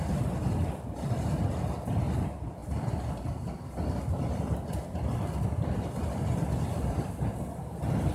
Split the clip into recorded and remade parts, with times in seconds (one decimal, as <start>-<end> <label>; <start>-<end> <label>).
0.0-8.1 recorded